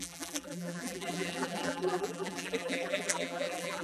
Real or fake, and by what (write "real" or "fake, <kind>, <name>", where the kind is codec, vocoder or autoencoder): fake, vocoder, BigVGAN v2